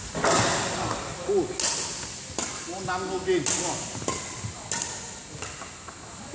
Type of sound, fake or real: real